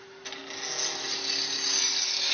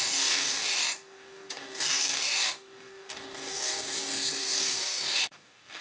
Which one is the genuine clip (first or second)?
first